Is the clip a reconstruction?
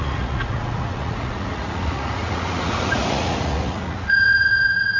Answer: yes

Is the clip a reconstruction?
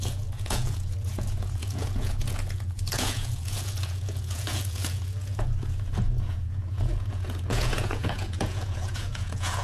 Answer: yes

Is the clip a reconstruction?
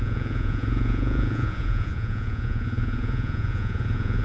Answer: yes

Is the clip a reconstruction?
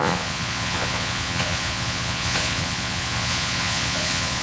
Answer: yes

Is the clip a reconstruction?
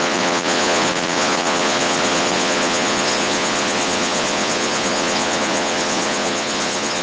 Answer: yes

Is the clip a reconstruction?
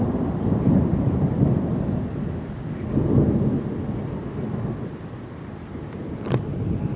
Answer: no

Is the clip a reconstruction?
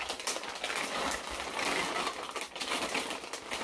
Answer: no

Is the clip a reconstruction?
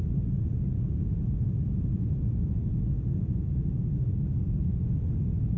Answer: yes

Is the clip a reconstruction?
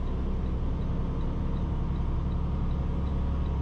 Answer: no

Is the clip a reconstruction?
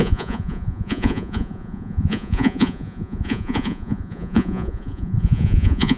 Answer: yes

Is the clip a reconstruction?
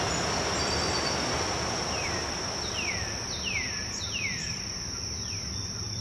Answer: no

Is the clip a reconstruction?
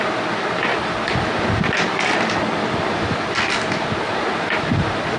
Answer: no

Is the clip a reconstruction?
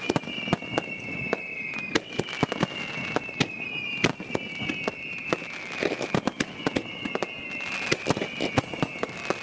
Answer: no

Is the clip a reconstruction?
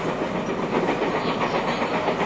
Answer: no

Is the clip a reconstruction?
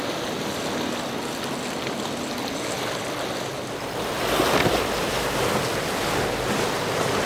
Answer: no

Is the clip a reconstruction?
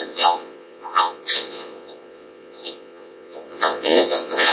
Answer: yes